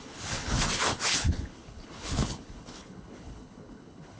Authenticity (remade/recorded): remade